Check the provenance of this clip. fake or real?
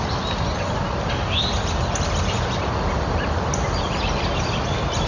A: real